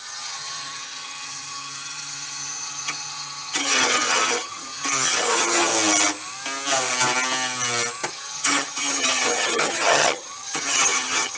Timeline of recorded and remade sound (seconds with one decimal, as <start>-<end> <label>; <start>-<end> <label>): 0.0-5.7 remade; 5.7-8.1 recorded; 8.1-11.4 remade